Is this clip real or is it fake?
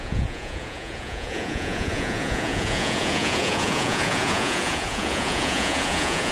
fake